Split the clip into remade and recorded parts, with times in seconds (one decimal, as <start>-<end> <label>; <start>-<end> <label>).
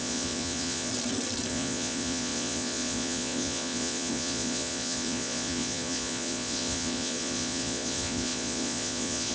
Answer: 0.0-0.9 remade; 0.9-1.5 recorded; 1.5-9.3 remade